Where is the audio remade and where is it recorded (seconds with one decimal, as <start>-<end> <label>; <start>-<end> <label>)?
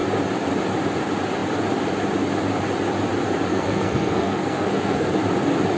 0.0-3.5 recorded; 3.5-5.1 remade; 5.1-5.8 recorded